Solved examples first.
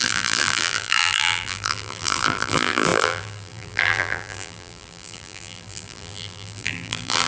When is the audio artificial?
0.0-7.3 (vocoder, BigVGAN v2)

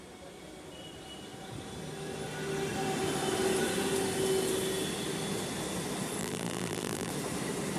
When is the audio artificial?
6.2-7.1 (vocoder, BigVGAN v2)